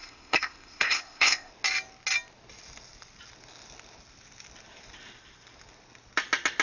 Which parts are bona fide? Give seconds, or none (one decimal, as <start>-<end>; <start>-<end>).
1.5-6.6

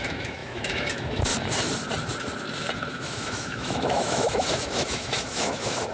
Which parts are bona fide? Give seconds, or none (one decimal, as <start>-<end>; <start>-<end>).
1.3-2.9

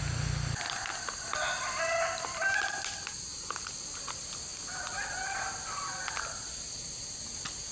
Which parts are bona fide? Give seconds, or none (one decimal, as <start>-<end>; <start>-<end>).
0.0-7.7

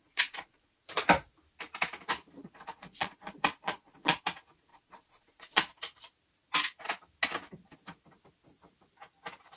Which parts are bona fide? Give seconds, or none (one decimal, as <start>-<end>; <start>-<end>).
0.8-2.4; 4.2-4.7; 5.7-9.6